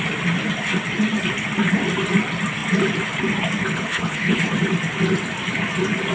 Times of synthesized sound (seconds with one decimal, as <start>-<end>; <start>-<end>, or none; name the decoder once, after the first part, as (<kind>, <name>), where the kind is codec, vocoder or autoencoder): 3.6-4.4 (codec, HILCodec)

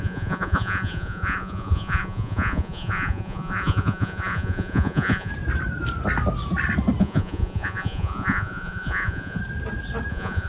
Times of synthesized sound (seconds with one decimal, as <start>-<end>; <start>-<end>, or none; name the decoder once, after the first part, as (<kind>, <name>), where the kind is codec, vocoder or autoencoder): 0.0-5.3 (vocoder, Vocos); 7.0-9.4; 10.1-10.5

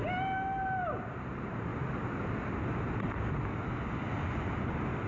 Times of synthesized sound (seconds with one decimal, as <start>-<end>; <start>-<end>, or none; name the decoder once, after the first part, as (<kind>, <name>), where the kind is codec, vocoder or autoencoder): 0.8-1.7 (vocoder, BigVGAN v2)

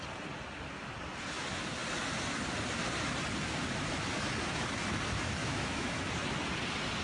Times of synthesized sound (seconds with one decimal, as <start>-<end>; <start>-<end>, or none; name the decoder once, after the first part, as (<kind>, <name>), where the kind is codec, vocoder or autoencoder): 5.4-6.0 (autoencoder, DAC-VAE)

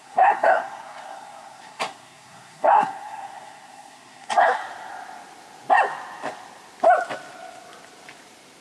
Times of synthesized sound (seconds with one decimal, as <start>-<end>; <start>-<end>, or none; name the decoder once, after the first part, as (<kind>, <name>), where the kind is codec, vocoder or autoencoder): 0.0-4.6 (codec, SNAC)

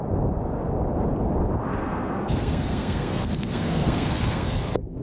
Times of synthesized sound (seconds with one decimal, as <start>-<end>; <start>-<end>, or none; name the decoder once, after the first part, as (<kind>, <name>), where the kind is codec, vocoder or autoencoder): 1.8-5.0 (codec, SNAC)

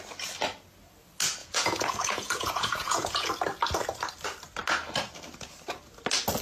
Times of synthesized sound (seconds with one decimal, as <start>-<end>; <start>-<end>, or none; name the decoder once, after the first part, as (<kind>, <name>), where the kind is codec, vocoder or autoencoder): 1.4-3.3 (vocoder, Vocos)